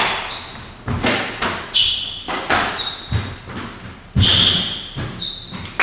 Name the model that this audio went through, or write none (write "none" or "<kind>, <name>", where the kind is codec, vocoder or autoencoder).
none